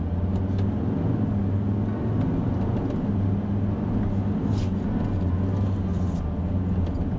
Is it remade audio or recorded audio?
recorded